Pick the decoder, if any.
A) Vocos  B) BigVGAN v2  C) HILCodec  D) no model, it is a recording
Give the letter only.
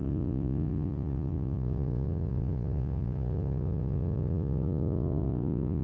A